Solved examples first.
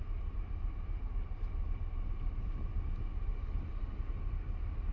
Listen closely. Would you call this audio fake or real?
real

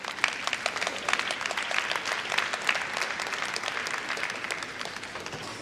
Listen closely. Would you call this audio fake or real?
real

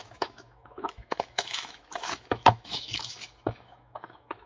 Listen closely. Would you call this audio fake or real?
fake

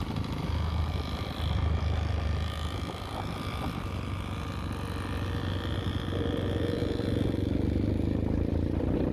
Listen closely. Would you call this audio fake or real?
real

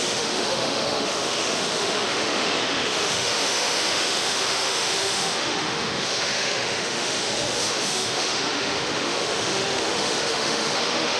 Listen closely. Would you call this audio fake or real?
fake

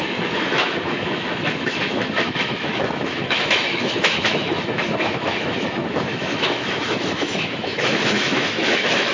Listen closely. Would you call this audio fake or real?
fake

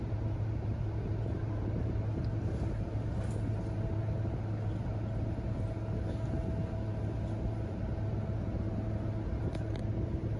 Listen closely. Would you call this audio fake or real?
real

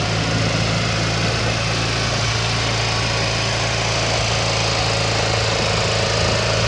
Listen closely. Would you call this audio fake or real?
real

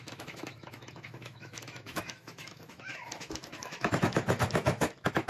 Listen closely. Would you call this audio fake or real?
fake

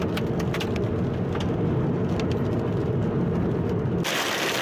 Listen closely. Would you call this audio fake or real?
real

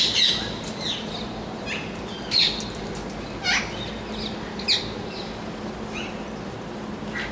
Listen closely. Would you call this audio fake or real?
real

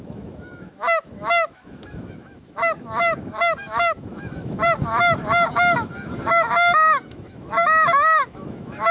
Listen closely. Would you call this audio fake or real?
fake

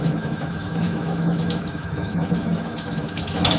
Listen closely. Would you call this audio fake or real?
fake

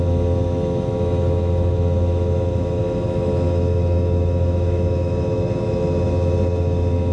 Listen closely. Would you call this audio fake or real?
fake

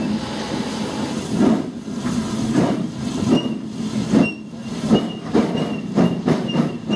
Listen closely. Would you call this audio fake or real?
real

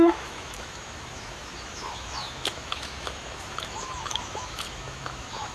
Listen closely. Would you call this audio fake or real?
fake